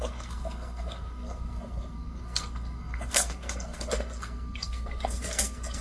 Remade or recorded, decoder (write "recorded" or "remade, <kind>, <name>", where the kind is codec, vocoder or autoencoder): remade, codec, SNAC